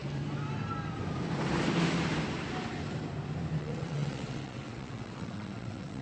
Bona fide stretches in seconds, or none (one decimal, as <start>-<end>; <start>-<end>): 0.0-3.6